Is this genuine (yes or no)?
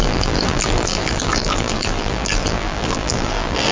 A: no